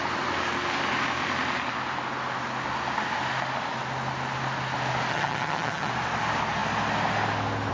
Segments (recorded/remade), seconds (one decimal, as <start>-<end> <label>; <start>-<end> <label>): 0.0-5.1 recorded; 5.1-5.9 remade; 5.9-7.7 recorded